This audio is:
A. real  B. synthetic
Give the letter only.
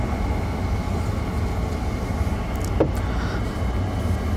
A